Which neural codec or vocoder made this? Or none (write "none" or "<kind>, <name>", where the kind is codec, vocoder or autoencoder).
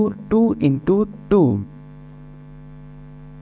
none